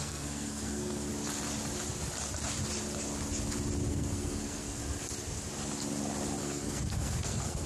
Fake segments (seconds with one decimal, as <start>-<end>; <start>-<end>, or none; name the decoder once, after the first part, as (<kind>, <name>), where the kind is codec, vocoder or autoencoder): 0.0-1.1 (codec, SNAC); 3.9-4.8; 6.4-7.7